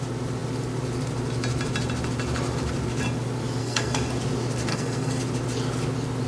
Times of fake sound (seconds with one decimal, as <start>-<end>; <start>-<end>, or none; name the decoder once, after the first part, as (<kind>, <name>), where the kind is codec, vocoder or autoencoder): 3.6-4.1 (codec, SNAC); 4.7-5.2